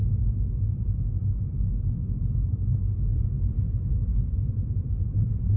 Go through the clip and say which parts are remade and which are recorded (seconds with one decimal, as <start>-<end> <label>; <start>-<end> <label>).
0.0-4.1 recorded; 4.1-5.6 remade